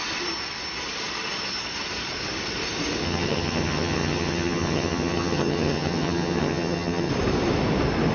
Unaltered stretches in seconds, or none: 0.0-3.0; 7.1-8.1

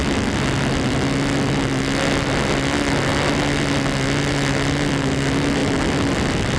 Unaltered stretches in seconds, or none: 0.0-6.6

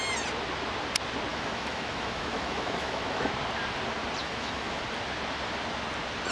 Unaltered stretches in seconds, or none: 0.0-1.3; 3.3-4.2; 4.8-6.3

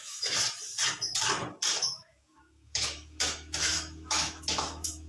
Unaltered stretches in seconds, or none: 0.4-1.8

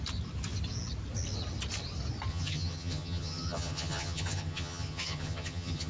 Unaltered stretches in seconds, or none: 0.0-2.3